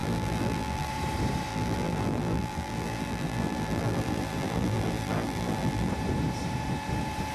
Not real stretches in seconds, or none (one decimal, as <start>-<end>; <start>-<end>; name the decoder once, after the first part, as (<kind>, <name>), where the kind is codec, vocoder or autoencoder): 0.0-0.9 (vocoder, BigVGAN v2); 1.5-5.9